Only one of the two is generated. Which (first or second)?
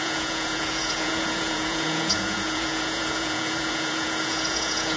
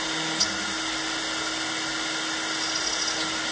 first